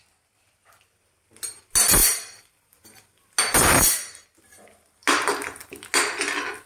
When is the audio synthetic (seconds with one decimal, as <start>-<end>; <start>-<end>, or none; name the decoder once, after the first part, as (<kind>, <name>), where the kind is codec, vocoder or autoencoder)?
2.0-2.7 (vocoder, BigVGAN v2)